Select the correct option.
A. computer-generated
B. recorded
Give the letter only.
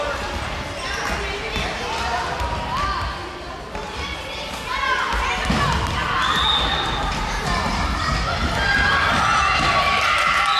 B